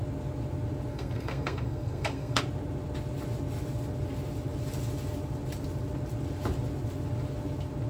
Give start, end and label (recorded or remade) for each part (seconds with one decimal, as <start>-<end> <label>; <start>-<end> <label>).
0.0-0.9 recorded; 0.9-2.4 remade; 2.4-7.9 recorded